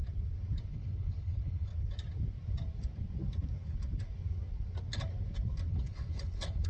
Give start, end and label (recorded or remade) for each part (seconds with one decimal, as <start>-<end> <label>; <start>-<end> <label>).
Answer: 0.0-0.7 recorded; 0.7-1.7 remade; 1.7-5.7 recorded; 5.7-6.7 remade